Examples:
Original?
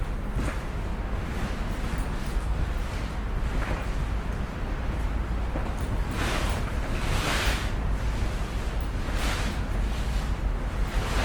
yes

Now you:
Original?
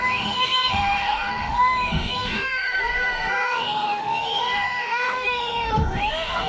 no